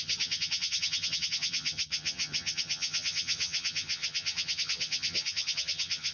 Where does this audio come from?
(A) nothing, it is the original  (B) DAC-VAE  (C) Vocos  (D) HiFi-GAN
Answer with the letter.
D